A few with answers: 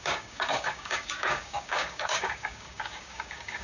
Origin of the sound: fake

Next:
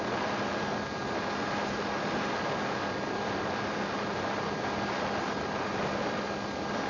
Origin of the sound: real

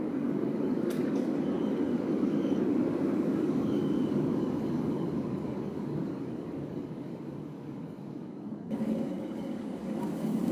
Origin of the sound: fake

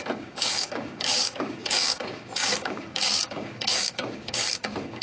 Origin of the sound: fake